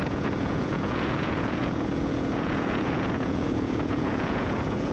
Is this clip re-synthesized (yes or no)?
yes